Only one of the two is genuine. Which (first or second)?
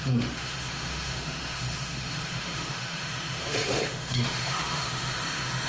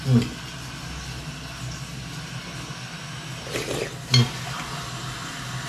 second